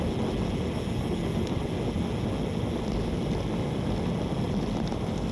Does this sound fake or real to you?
real